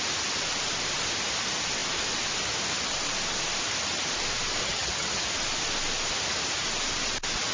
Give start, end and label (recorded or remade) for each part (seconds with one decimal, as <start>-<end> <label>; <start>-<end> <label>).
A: 0.0-4.6 recorded; 4.6-5.2 remade; 5.2-7.5 recorded